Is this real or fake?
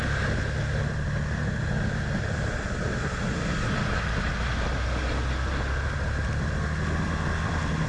real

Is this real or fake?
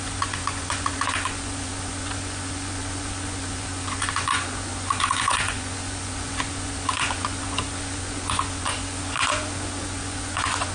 fake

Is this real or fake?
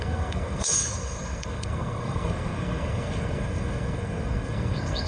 fake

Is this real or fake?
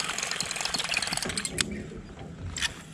real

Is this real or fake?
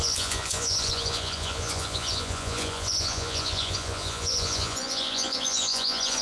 fake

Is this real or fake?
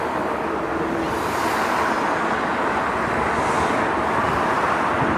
fake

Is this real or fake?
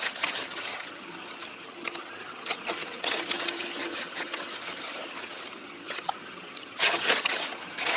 fake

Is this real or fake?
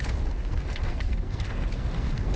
fake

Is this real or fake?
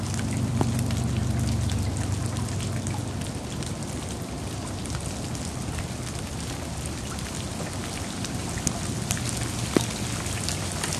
real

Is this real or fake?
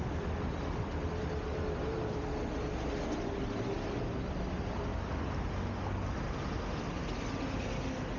real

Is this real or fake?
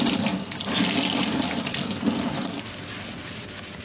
real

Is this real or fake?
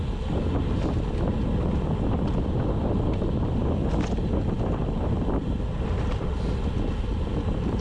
real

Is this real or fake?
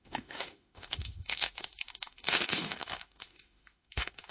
fake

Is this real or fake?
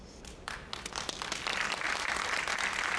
fake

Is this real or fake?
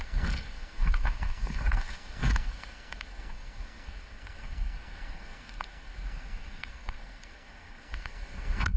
fake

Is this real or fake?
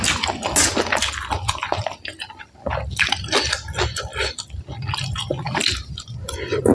real